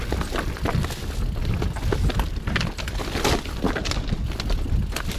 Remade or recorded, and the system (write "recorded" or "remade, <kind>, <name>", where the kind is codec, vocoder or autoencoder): recorded